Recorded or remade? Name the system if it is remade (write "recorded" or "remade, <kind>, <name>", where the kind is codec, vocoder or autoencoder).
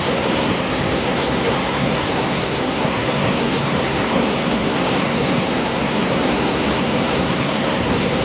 remade, codec, SNAC